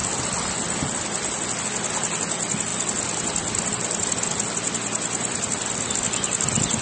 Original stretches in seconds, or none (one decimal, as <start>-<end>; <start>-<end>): 0.0-6.8